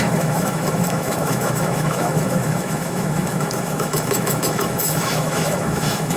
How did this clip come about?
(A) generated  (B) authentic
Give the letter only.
A